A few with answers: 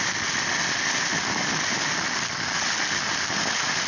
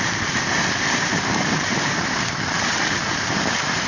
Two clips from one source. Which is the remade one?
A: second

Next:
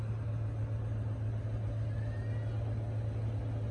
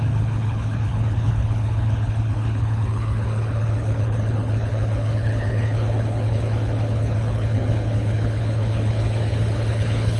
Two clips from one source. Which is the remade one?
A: second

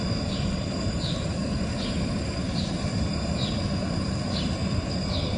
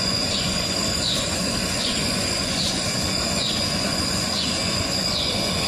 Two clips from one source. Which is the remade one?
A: second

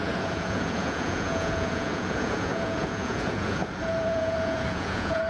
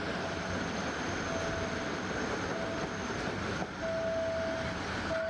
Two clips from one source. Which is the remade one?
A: first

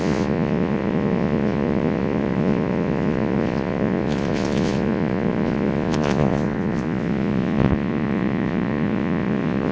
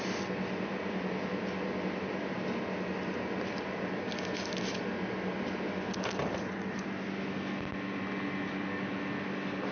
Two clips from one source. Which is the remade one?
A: first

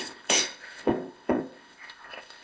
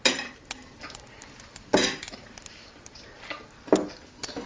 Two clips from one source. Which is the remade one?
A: first